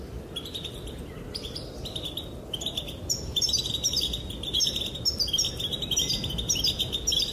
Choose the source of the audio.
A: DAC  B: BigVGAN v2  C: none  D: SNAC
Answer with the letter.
C